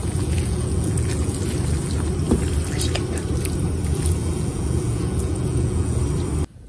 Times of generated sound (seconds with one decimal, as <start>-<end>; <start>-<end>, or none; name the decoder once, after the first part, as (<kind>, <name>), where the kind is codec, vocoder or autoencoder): 0.0-1.3 (vocoder, Vocos); 4.2-6.0